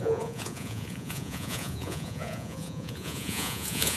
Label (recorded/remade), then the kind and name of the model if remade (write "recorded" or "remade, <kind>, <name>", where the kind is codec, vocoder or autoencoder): remade, vocoder, Vocos